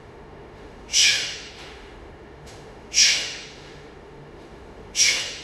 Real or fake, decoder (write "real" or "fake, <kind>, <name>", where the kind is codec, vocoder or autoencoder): fake, autoencoder, DAC-VAE